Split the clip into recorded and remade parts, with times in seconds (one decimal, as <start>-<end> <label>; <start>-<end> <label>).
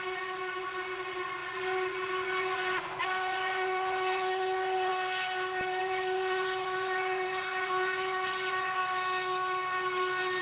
0.0-4.9 remade; 4.9-5.8 recorded; 5.8-8.8 remade; 8.8-10.4 recorded